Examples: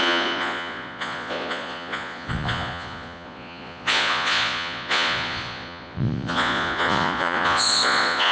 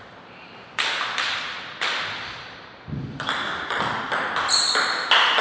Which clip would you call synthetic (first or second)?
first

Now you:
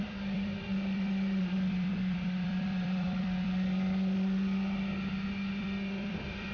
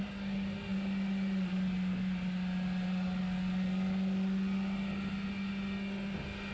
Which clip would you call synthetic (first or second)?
first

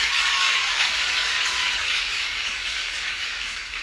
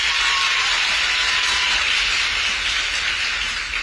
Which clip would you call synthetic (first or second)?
first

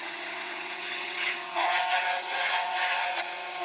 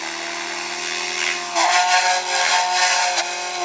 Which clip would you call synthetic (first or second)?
first